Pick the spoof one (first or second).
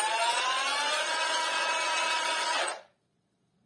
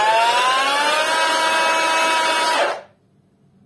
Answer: first